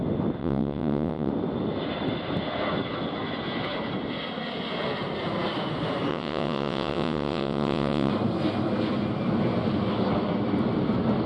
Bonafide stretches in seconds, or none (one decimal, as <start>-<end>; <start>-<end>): 0.0-0.4; 1.3-6.1; 8.1-11.3

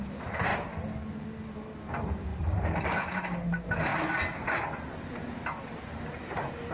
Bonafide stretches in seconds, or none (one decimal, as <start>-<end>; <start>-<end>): 0.5-1.9; 3.9-5.1

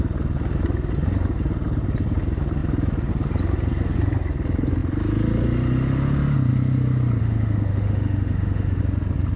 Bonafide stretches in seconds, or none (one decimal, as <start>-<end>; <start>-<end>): 0.0-7.2; 8.8-9.4